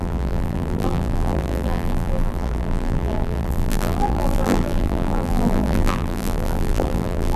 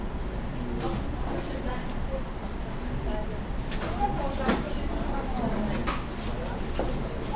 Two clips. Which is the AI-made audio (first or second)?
first